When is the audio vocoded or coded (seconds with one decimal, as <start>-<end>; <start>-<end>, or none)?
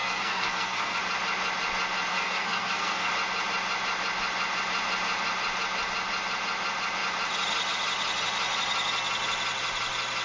0.0-1.0; 2.1-3.1